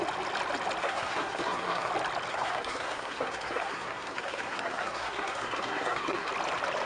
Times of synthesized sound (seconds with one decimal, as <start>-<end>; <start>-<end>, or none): 0.8-1.9; 2.3-6.3